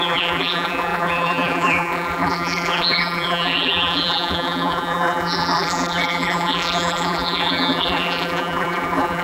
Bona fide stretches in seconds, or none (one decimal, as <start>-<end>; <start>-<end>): none